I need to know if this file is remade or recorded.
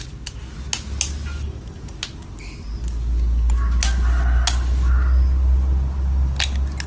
recorded